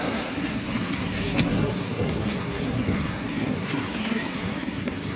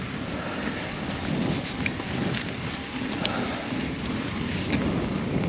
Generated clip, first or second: first